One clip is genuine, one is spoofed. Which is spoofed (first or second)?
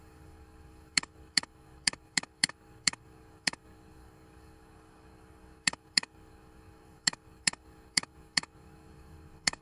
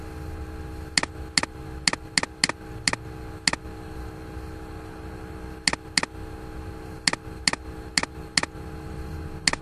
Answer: first